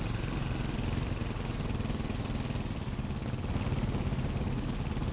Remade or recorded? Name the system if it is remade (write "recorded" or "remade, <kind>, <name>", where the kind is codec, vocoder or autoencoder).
recorded